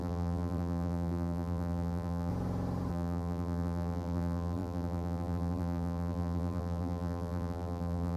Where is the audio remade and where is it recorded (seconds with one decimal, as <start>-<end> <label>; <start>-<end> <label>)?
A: 0.0-2.3 remade; 2.3-2.9 recorded; 2.9-8.2 remade